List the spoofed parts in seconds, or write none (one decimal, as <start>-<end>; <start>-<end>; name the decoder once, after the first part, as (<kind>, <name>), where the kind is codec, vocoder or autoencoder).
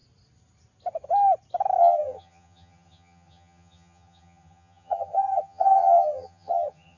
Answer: 1.8-7.0 (vocoder, HiFi-GAN)